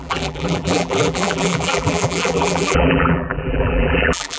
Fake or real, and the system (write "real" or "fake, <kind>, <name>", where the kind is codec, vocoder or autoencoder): fake, vocoder, BigVGAN v2